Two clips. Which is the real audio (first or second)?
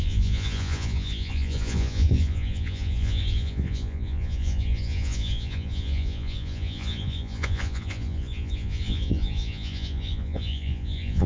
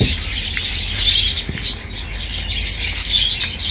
second